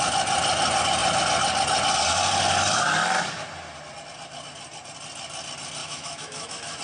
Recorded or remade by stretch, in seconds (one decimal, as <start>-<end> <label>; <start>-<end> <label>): 0.0-5.8 recorded; 5.8-6.8 remade

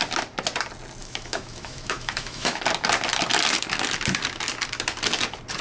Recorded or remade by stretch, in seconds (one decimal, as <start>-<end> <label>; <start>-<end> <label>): 0.0-1.0 recorded; 1.0-2.6 remade; 2.6-5.6 recorded